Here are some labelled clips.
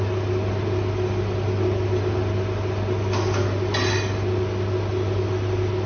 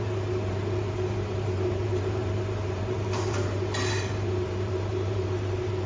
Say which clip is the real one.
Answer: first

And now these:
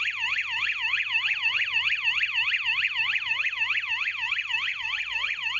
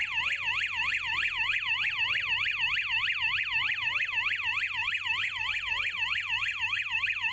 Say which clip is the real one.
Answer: first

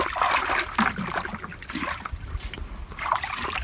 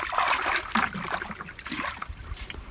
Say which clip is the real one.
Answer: first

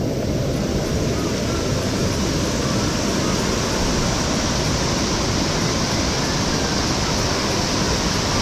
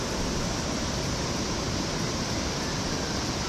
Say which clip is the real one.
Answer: first